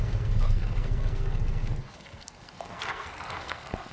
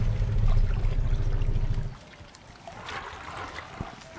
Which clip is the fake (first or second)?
first